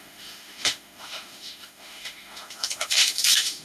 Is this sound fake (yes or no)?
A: yes